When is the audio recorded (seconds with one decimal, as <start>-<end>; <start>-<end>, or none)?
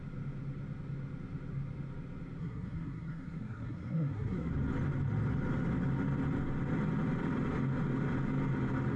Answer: 0.0-2.4; 4.5-9.0